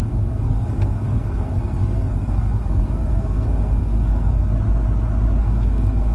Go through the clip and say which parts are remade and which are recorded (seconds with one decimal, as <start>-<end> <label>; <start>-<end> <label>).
0.0-4.5 remade; 4.5-5.4 recorded; 5.4-6.1 remade